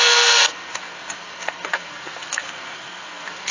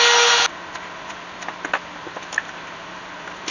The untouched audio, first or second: second